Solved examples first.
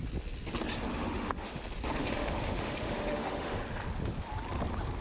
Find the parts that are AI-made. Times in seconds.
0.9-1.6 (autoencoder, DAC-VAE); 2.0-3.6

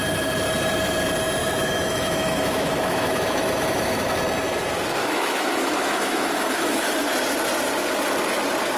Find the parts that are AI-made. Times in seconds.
1.4-4.2 (autoencoder, DAC-VAE); 5.0-6.9

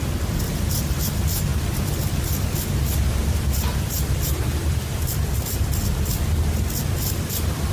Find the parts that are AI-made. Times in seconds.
none

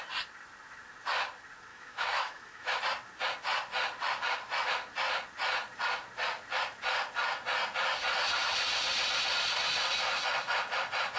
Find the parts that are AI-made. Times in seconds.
1.7-2.8 (autoencoder, DAC-VAE)

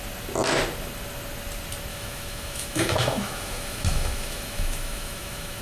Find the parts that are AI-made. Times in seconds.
1.9-5.6 (autoencoder, DAC-VAE)

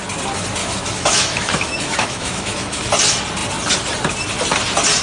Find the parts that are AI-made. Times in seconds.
0.6-2.9 (autoencoder, DAC-VAE)

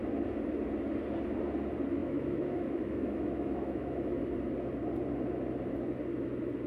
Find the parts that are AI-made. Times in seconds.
2.0-4.2 (autoencoder, DAC-VAE)